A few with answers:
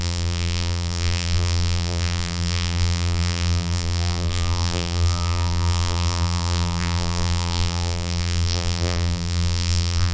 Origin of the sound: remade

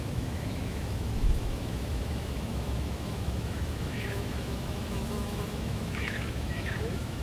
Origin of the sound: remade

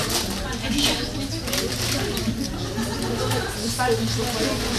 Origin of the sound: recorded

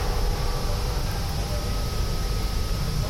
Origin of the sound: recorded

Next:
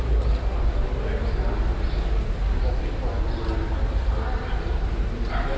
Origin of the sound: remade